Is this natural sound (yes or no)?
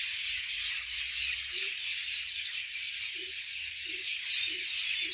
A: yes